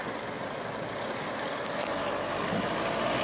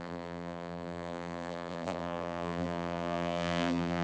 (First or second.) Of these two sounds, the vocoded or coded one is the second